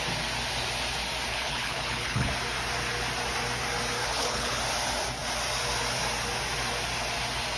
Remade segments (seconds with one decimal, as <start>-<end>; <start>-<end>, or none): 1.3-2.3; 4.0-4.6